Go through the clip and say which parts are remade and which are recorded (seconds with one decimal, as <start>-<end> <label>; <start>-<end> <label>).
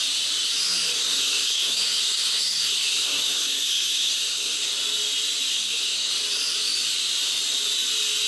0.0-1.0 recorded; 1.0-4.7 remade; 4.7-5.5 recorded; 5.5-6.1 remade; 6.1-8.3 recorded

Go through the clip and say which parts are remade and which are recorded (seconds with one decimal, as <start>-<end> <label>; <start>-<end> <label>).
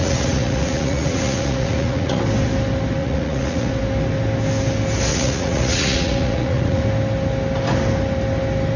0.0-2.2 remade; 2.2-3.0 recorded; 3.0-3.7 remade; 3.7-5.1 recorded; 5.1-6.8 remade; 6.8-8.8 recorded